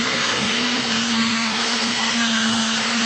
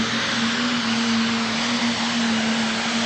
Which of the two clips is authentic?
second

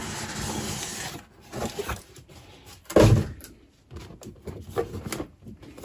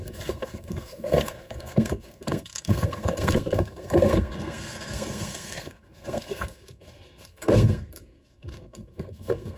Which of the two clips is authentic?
first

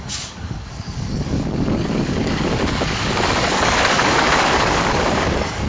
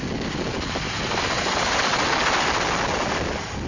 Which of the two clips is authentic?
second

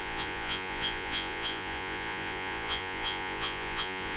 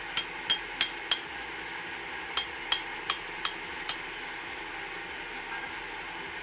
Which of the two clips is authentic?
second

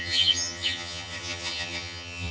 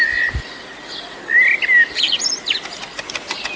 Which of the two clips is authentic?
second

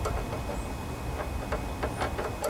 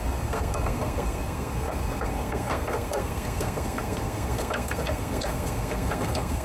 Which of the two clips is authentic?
first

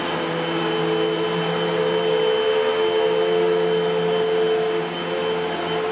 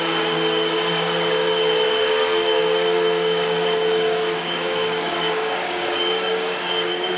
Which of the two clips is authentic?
first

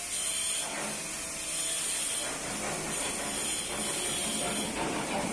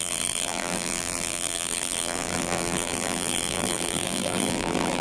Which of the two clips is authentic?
first